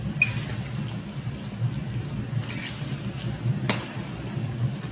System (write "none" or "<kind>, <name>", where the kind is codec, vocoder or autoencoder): none